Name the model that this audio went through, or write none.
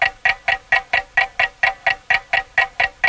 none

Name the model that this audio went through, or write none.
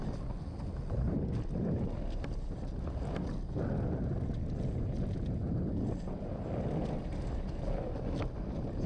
none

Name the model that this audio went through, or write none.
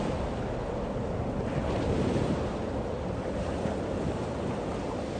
none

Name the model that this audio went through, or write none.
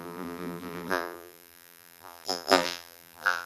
vocoder, BigVGAN v2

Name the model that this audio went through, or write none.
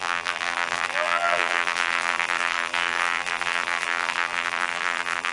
vocoder, BigVGAN v2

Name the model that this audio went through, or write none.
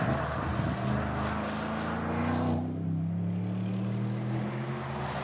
none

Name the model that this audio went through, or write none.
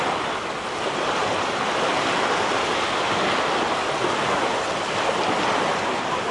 none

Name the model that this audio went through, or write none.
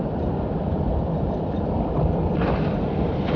vocoder, BigVGAN v2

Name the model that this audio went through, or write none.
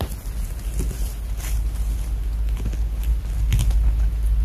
none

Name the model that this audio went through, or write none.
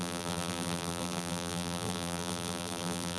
vocoder, BigVGAN v2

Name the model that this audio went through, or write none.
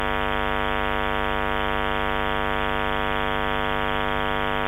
none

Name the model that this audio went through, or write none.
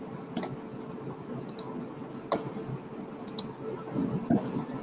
none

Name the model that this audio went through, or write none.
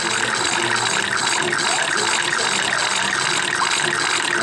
none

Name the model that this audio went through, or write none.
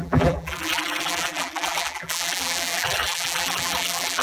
vocoder, BigVGAN v2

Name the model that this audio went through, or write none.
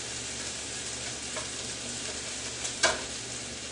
none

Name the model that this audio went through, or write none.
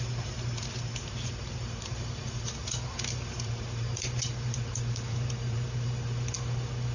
vocoder, BigVGAN v2